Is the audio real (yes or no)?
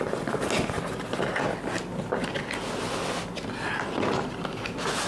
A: yes